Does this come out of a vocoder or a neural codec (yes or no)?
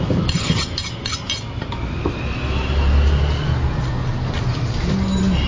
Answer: no